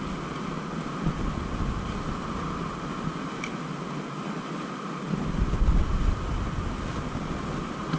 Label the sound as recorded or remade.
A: recorded